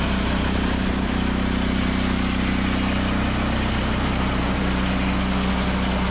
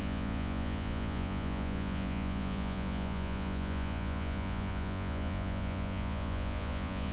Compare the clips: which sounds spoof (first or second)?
second